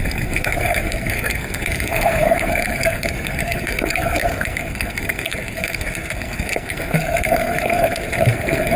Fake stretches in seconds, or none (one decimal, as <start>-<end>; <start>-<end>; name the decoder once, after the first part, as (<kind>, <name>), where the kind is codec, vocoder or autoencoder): 0.0-8.8 (codec, SNAC)